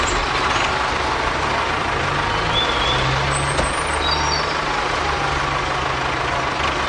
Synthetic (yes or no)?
no